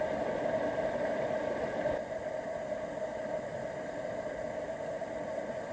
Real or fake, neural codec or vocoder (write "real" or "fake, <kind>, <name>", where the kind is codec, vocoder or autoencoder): real